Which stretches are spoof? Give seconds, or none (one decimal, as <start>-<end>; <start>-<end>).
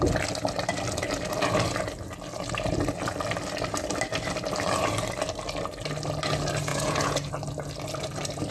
6.7-7.3